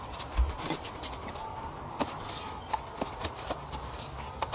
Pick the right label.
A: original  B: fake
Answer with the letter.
A